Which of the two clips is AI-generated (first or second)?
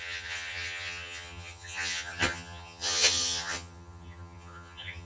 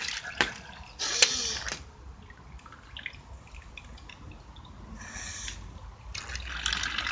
first